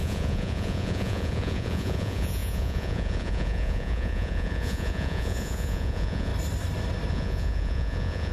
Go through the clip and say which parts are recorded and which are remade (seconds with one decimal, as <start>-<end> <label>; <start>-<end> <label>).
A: 0.0-6.3 remade; 6.3-7.1 recorded; 7.1-8.3 remade